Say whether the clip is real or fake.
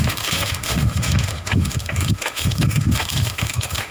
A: fake